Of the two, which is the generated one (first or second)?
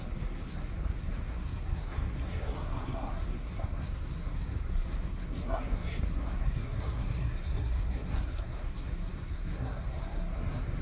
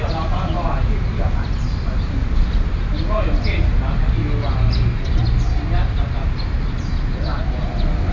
first